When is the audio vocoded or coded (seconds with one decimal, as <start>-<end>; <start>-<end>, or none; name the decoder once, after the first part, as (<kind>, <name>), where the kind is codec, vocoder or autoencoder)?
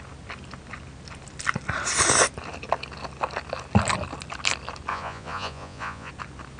4.9-6.1 (vocoder, Vocos)